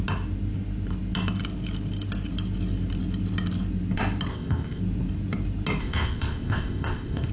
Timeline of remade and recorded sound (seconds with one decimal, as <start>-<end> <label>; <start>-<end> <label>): 0.0-4.3 recorded; 4.3-4.8 remade; 4.8-5.8 recorded; 5.8-7.3 remade